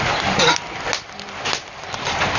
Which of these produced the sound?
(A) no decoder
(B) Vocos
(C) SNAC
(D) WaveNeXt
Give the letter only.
A